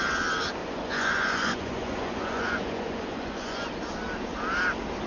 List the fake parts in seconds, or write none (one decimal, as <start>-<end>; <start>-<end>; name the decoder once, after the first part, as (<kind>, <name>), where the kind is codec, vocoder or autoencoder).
0.6-3.7 (vocoder, Vocos)